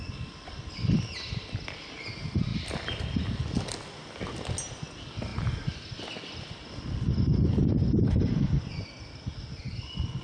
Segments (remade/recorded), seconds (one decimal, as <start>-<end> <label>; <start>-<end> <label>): 0.0-10.2 recorded